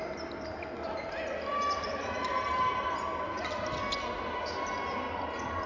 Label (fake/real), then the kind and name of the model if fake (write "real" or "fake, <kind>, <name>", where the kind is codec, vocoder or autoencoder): real